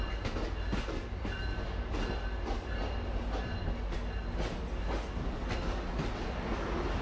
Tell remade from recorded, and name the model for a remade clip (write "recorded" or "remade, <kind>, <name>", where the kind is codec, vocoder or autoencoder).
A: recorded